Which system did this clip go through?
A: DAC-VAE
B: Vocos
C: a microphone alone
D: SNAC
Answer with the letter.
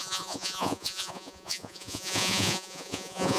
B